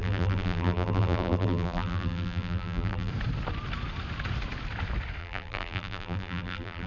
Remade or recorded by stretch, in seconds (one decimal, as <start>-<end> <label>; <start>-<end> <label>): 0.0-3.1 remade; 3.1-5.2 recorded; 5.2-6.9 remade